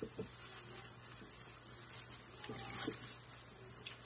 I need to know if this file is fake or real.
real